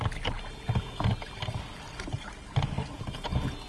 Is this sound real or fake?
real